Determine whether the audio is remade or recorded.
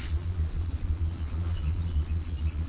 remade